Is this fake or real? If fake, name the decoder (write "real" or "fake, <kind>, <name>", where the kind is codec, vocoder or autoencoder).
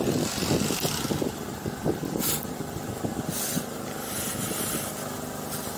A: real